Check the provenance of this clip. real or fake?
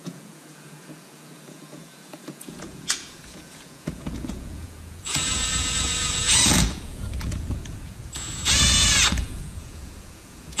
fake